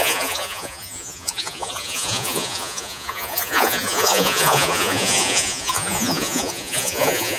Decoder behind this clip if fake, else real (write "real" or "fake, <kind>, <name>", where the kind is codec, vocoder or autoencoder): fake, vocoder, Vocos